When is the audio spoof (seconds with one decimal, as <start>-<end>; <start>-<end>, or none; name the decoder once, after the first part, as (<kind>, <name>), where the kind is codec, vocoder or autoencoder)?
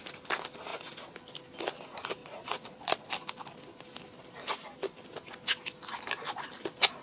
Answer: 2.2-3.1 (vocoder, Vocos)